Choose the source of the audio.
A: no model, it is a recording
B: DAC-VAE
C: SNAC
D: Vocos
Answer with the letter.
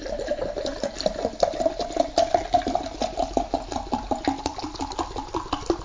A